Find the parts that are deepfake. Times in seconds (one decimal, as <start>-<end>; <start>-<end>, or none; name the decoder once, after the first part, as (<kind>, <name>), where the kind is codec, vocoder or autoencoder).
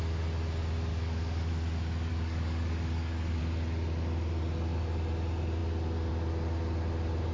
0.9-1.5 (codec, DAC); 2.1-3.4